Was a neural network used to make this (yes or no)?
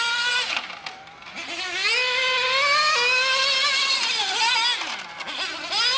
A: no